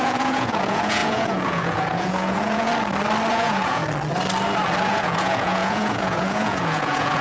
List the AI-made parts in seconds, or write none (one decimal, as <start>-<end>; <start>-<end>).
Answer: 0.0-2.7; 3.3-3.8; 4.8-7.2